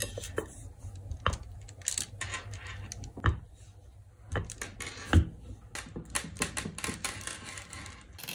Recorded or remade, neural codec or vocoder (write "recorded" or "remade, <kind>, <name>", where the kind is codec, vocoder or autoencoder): recorded